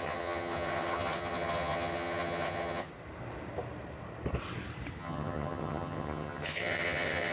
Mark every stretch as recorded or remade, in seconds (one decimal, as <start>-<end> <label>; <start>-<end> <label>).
0.0-2.9 remade; 2.9-5.0 recorded; 5.0-7.3 remade